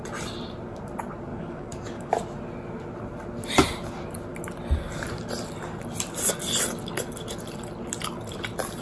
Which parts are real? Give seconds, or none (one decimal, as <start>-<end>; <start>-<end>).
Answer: 0.0-1.3; 2.1-8.8